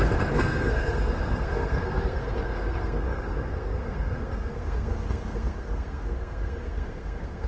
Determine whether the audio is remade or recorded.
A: remade